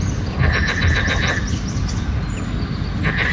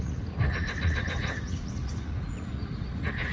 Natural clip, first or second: first